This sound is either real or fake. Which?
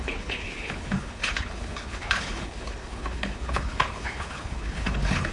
fake